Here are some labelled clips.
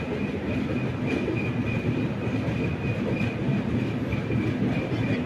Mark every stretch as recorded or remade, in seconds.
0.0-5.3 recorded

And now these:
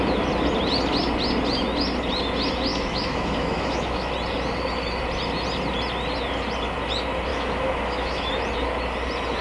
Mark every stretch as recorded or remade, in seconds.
0.0-2.7 recorded; 2.7-4.1 remade; 4.1-7.3 recorded; 7.3-8.3 remade; 8.3-9.4 recorded

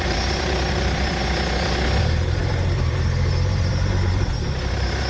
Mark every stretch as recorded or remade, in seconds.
0.0-1.2 remade; 1.2-2.0 recorded; 2.0-5.1 remade

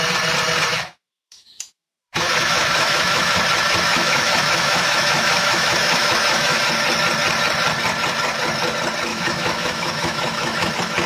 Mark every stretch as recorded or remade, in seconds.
0.0-0.7 recorded; 0.7-3.4 remade; 3.4-3.9 recorded; 3.9-6.6 remade; 6.6-9.1 recorded; 9.1-10.7 remade; 10.7-11.1 recorded

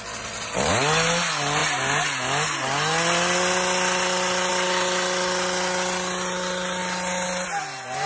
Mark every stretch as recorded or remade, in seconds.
0.0-8.1 recorded

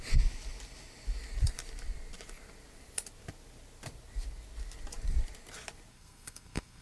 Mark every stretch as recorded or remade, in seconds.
0.0-5.9 recorded; 5.9-6.8 remade

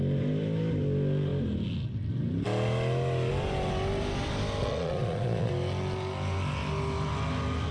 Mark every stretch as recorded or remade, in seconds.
0.0-4.6 recorded; 4.6-5.5 remade; 5.5-7.7 recorded